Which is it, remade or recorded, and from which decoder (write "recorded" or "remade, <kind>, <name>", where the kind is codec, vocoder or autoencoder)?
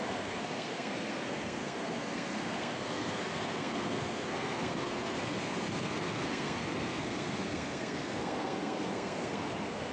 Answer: remade, codec, SNAC